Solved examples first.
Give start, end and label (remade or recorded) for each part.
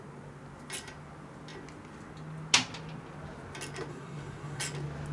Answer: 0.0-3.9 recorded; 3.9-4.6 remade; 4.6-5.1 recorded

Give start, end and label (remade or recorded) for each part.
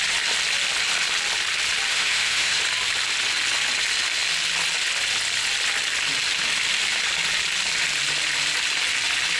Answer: 0.0-1.9 recorded; 1.9-2.6 remade; 2.6-9.4 recorded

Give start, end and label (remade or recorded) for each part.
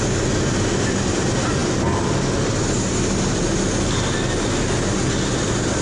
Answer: 0.0-5.8 recorded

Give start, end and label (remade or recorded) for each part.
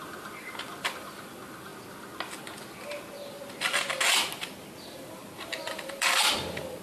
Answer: 0.0-1.7 remade; 1.7-4.8 recorded; 4.8-6.8 remade